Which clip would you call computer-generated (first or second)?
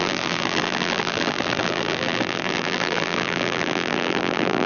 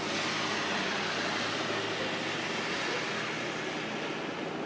first